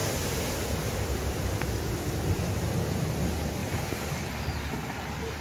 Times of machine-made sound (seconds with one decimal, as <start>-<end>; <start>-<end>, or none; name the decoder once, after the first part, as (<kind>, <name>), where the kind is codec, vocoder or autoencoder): none